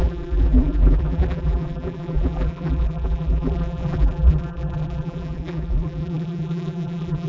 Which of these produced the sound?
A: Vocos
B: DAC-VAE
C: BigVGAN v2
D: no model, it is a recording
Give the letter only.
C